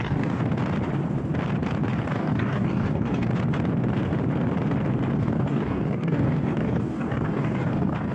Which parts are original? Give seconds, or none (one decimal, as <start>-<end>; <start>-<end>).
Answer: 0.4-2.0; 3.3-5.2